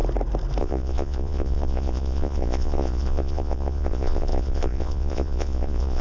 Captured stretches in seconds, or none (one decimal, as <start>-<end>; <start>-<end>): 0.0-0.6